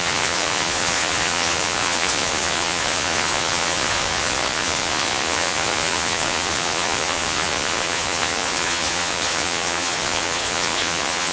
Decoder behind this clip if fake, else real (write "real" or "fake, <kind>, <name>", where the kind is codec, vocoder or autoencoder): fake, vocoder, Vocos